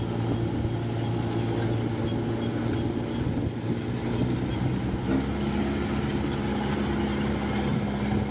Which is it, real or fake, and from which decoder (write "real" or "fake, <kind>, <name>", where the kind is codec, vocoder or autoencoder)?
real